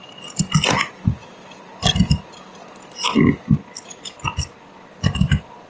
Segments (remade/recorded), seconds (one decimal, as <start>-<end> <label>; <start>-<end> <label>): 0.0-5.7 recorded